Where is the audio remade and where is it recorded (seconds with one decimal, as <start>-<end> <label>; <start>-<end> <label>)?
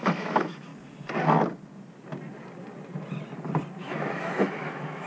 0.0-0.7 remade; 0.7-3.8 recorded; 3.8-5.1 remade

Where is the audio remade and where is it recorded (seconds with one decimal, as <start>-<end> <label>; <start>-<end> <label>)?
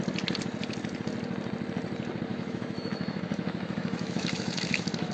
0.0-2.3 recorded; 2.3-5.1 remade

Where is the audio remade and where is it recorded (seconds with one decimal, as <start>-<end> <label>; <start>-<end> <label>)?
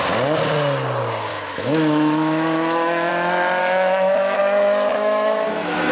0.0-1.3 recorded; 1.3-3.1 remade; 3.1-3.6 recorded; 3.6-4.4 remade; 4.4-4.9 recorded; 4.9-5.9 remade